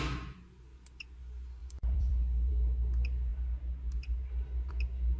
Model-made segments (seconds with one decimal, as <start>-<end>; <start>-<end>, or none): 1.6-2.5